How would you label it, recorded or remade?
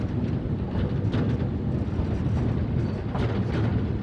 recorded